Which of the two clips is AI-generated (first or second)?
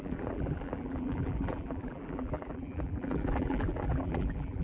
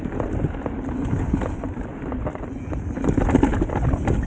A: first